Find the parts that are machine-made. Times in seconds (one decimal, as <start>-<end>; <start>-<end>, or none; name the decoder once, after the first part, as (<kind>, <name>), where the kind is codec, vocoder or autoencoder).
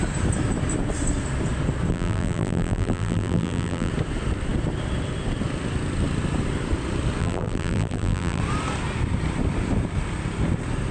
1.9-3.9 (vocoder, BigVGAN v2); 7.2-8.4